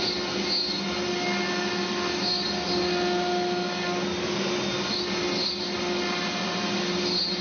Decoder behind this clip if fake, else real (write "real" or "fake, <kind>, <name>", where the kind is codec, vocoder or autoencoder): real